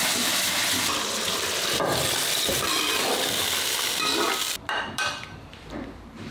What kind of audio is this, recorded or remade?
remade